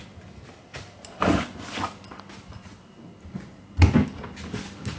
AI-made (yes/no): no